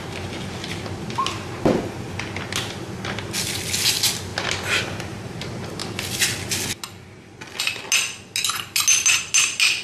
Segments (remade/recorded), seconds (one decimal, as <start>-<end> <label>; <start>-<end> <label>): 0.0-9.8 recorded